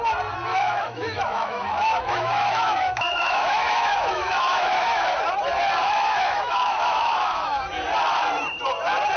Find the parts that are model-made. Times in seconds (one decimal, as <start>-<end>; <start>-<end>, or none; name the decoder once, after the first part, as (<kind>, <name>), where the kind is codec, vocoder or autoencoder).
0.5-5.2 (autoencoder, DAC-VAE); 5.8-7.7